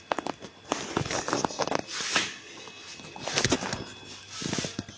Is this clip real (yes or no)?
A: yes